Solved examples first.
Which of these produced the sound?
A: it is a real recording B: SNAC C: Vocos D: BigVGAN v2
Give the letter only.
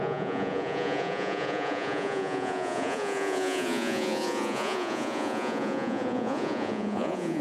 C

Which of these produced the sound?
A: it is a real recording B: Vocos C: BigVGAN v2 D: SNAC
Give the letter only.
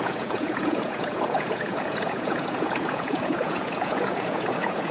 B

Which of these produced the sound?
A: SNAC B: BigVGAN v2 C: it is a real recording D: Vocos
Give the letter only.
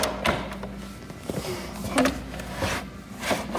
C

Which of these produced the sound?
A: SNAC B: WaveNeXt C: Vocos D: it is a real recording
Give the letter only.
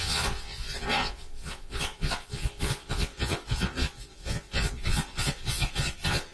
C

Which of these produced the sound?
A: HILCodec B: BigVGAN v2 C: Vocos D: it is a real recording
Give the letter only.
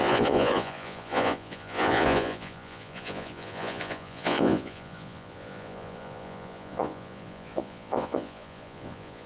C